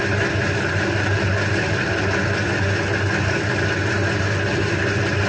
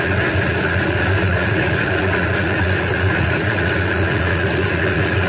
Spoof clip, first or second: second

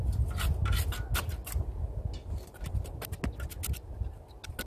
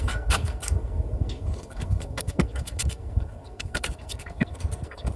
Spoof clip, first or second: second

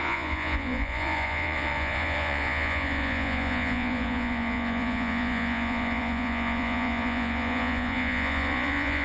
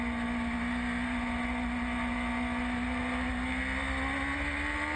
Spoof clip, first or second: first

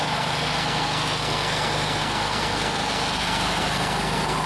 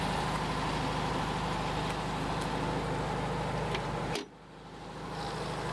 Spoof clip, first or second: first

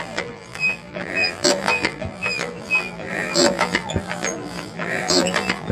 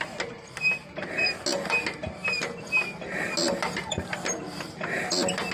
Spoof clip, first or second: first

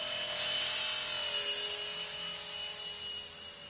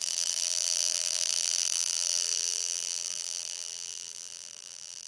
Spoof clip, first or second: second